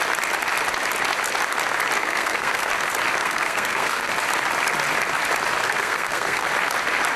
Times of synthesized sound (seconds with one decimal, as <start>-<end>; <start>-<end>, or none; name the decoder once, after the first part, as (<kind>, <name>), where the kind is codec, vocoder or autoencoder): 2.0-2.7 (codec, SNAC); 3.2-4.1; 5.6-6.5